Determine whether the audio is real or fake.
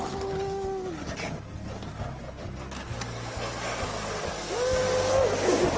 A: real